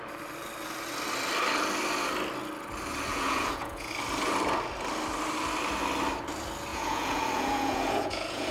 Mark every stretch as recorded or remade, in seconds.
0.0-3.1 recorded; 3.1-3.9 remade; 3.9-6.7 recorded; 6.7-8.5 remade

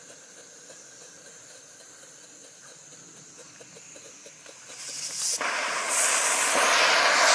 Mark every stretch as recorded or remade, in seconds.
0.0-7.3 recorded

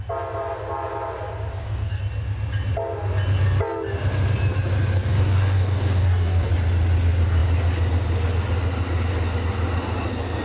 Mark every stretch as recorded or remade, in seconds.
0.0-1.5 recorded; 1.5-2.0 remade; 2.0-5.1 recorded; 5.1-6.5 remade; 6.5-10.4 recorded